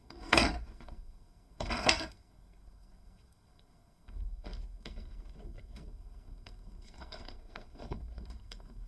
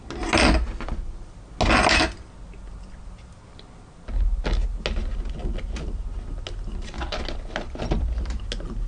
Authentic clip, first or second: second